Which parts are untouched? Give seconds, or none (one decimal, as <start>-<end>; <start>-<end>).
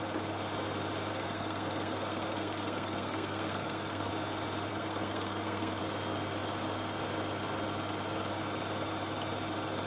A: 0.0-1.1; 4.1-4.7; 5.8-9.9